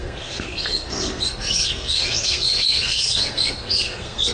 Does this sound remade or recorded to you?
remade